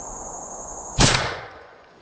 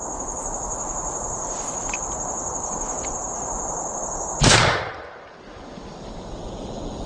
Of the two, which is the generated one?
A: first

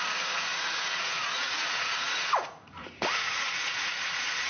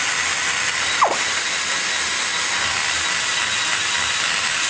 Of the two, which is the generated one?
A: first